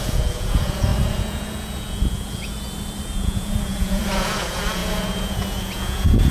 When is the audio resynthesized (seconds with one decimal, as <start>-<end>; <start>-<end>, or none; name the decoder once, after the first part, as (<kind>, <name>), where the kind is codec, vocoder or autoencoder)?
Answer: 0.0-6.3 (vocoder, Vocos)